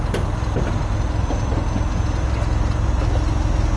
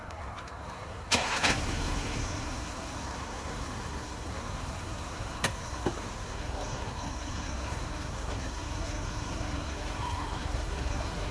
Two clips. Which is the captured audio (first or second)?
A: first